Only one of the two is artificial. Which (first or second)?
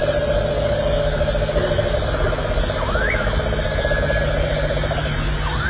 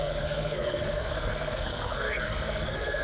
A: second